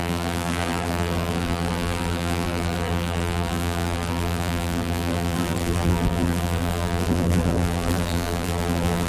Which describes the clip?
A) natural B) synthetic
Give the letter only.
B